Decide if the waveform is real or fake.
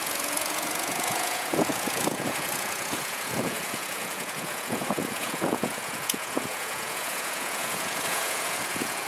fake